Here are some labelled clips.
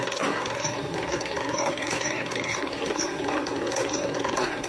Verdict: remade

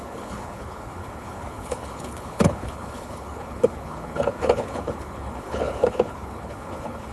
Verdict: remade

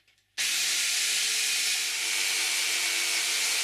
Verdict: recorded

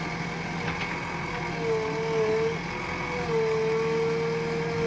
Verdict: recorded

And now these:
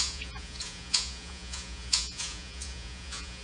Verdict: remade